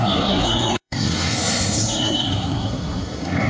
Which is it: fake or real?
fake